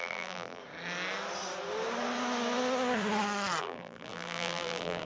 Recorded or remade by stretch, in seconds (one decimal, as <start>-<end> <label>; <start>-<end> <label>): 0.0-0.6 remade; 0.6-3.6 recorded; 3.6-5.0 remade